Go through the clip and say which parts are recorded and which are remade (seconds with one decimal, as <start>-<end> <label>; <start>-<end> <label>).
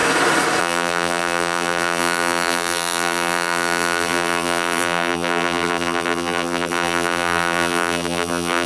0.0-0.6 recorded; 0.6-8.7 remade